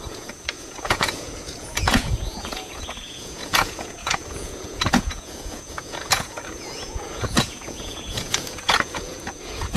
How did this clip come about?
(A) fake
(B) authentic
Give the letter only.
A